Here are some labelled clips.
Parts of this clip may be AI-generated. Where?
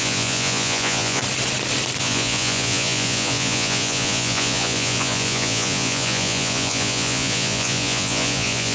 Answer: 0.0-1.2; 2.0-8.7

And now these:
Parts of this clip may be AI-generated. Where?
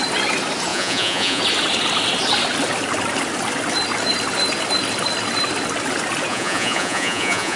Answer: 0.7-1.4; 6.3-7.6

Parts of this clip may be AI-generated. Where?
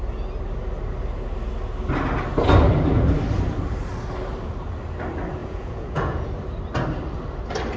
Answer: 5.4-6.3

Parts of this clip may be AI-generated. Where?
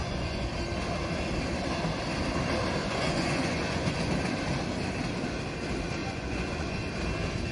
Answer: 0.0-0.5; 2.8-4.1; 6.0-6.9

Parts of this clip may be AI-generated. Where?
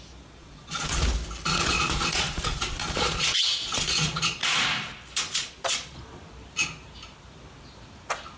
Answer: 0.4-1.0; 1.5-4.6; 5.3-6.2